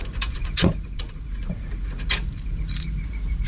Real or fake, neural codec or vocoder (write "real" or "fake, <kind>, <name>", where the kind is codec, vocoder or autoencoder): fake, vocoder, Vocos